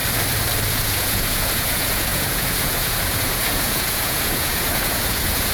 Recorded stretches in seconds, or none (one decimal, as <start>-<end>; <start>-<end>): 0.0-0.7